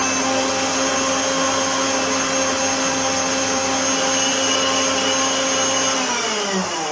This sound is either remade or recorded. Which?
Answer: recorded